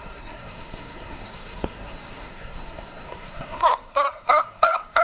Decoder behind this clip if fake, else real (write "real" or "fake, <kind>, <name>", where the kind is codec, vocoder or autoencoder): fake, codec, SNAC